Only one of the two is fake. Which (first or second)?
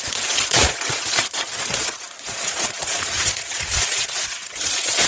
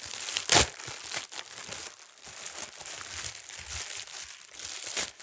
first